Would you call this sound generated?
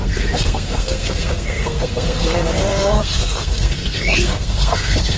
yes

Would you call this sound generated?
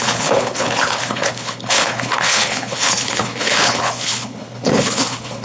yes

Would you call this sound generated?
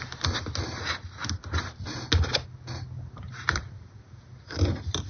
no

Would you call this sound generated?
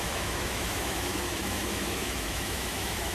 yes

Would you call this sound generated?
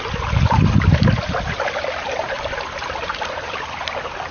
no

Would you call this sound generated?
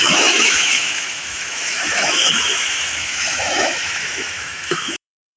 yes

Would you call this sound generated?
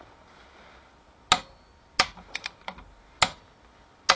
no